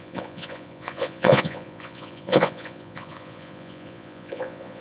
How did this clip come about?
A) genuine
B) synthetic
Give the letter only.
B